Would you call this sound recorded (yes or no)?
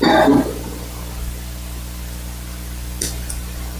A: yes